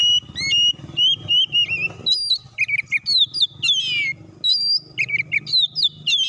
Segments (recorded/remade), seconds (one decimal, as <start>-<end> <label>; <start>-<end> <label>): 0.0-6.3 recorded